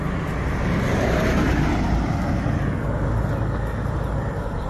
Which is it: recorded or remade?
recorded